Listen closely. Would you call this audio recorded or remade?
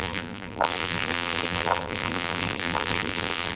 remade